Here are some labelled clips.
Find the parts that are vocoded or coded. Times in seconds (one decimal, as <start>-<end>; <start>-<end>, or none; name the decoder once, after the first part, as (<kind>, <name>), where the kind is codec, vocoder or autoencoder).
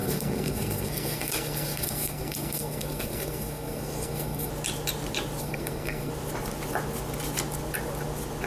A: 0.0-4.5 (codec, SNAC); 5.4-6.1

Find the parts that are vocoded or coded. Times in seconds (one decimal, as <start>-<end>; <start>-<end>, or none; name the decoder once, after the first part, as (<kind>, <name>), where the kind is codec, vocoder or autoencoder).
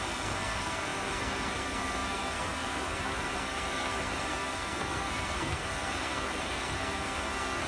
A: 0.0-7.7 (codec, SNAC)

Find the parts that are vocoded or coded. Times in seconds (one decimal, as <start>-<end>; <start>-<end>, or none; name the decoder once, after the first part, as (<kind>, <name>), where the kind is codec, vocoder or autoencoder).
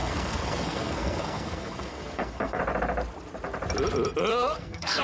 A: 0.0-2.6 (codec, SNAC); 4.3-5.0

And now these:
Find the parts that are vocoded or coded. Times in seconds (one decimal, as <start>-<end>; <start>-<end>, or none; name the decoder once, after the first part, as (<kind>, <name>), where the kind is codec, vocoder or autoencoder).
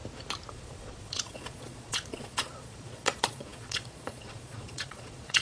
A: 0.5-5.4 (vocoder, Vocos)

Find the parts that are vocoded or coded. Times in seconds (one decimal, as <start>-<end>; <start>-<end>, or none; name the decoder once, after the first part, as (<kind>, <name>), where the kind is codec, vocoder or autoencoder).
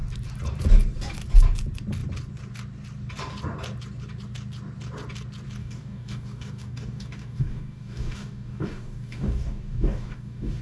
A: 5.6-10.6 (codec, DAC)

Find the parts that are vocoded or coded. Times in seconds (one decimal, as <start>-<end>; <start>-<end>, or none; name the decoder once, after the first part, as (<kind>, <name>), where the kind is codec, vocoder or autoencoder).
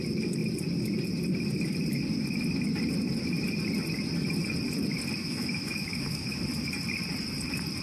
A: 5.2-6.4 (autoencoder, DAC-VAE)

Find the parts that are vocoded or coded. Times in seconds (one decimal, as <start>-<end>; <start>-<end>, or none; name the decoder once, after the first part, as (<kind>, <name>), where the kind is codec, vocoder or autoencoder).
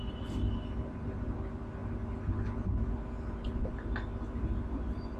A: none